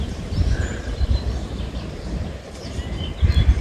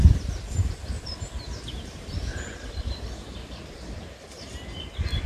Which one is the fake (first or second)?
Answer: first